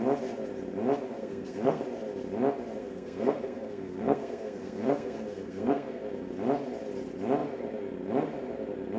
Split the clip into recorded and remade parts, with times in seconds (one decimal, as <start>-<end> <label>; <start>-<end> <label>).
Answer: 0.0-1.2 recorded; 1.2-1.8 remade; 1.8-2.8 recorded; 2.8-6.0 remade; 6.0-9.0 recorded